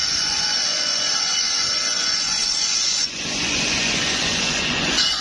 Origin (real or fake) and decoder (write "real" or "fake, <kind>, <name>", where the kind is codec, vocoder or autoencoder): fake, vocoder, Vocos